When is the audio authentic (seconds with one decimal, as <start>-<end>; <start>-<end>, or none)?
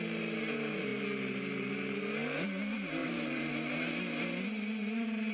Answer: 0.0-3.0; 3.5-5.3